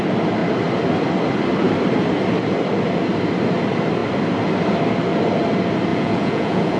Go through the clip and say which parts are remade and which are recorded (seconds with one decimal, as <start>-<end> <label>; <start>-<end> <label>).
0.0-5.9 recorded; 5.9-6.8 remade